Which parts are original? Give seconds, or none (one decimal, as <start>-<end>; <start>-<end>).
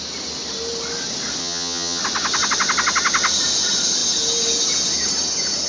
0.0-1.4; 2.0-5.7